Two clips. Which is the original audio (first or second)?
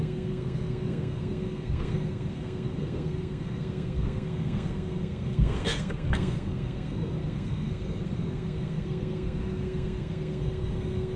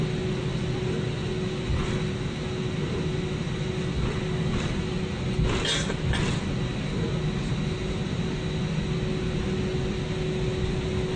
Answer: second